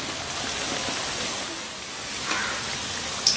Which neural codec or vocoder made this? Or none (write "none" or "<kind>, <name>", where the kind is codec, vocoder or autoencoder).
none